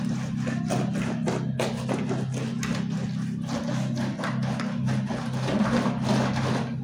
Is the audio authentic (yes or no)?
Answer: yes